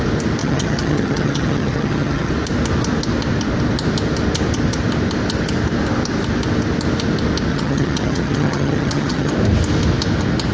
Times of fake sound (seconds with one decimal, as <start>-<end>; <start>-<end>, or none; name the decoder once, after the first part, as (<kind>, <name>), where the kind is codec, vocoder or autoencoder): 0.4-2.3 (vocoder, HiFi-GAN); 7.5-9.3